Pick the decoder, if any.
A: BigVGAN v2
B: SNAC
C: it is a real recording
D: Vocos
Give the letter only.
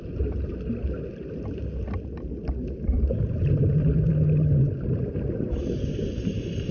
C